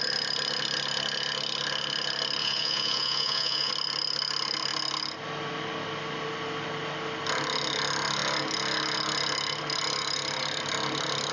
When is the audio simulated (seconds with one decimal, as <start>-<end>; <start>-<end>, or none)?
2.4-3.7